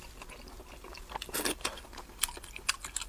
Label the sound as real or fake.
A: real